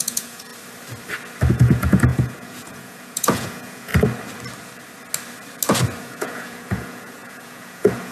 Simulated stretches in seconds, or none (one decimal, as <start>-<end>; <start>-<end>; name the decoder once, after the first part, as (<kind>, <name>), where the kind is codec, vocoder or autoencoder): 0.0-0.5 (vocoder, Vocos); 1.5-3.9; 6.0-8.1